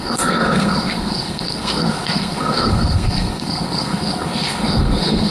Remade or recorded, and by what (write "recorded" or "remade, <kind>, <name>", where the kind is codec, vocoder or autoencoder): remade, codec, SNAC